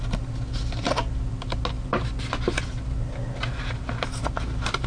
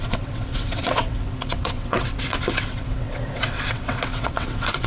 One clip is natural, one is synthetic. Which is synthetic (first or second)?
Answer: second